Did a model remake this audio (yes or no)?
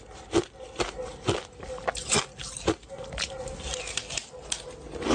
no